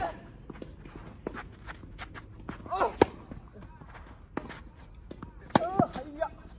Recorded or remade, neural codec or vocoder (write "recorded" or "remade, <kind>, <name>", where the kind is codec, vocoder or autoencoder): recorded